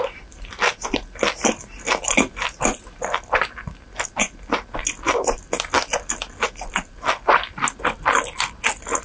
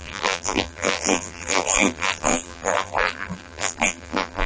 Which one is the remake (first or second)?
second